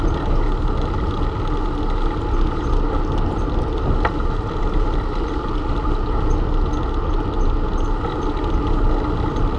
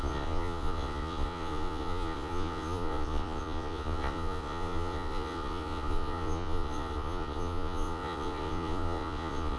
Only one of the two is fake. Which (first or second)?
second